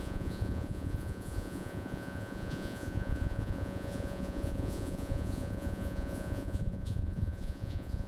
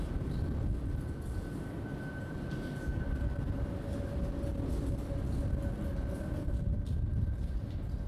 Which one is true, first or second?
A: second